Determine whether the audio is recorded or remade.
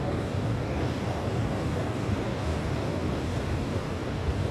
remade